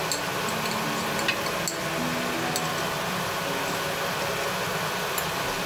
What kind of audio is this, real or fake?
real